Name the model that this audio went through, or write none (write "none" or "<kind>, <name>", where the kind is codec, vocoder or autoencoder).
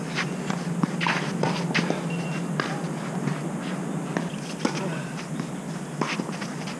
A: none